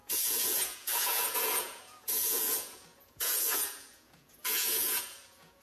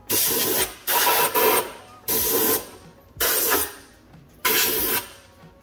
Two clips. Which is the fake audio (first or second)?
first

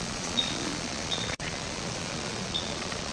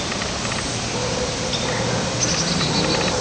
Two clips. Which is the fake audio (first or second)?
first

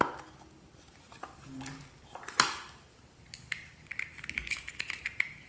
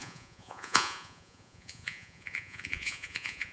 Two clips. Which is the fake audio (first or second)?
second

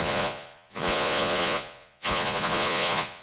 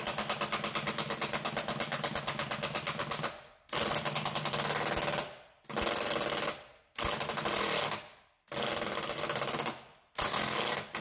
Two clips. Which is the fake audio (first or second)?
first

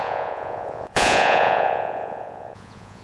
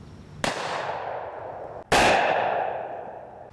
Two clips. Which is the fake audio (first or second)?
first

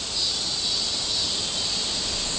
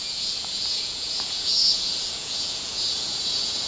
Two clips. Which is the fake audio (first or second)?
second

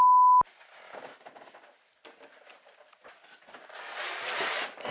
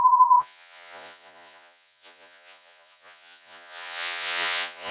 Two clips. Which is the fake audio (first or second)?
second